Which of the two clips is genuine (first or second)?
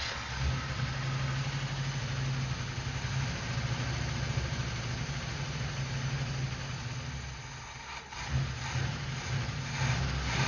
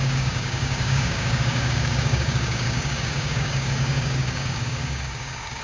first